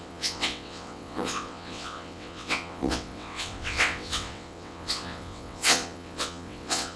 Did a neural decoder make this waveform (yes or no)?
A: yes